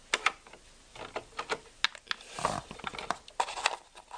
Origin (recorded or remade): recorded